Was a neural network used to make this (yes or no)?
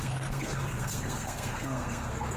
yes